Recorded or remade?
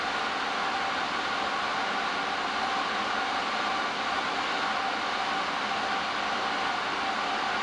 recorded